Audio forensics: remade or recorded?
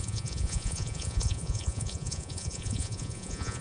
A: remade